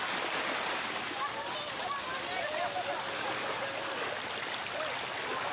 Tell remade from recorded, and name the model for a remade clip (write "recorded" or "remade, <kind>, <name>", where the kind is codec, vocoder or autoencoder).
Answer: recorded